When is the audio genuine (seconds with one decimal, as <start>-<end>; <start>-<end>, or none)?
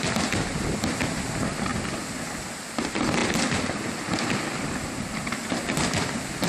0.0-6.5